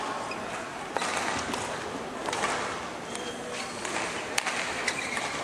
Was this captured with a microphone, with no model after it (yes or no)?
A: yes